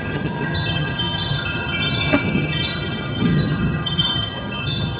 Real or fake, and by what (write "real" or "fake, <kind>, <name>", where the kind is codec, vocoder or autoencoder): fake, vocoder, HiFi-GAN